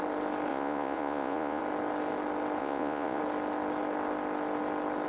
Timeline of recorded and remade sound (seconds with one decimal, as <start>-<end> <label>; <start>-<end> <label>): 0.0-0.5 recorded; 0.5-1.6 remade; 1.6-2.6 recorded; 2.6-3.2 remade; 3.2-5.1 recorded